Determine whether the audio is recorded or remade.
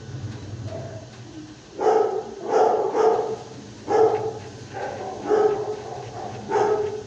recorded